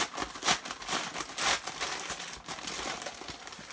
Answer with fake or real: real